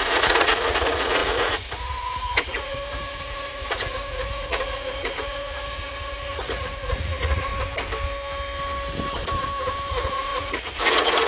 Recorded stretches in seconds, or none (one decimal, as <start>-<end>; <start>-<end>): 7.5-9.9